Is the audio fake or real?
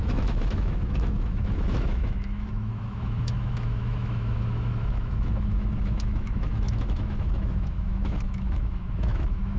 fake